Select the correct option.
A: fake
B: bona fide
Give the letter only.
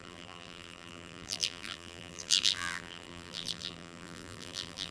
A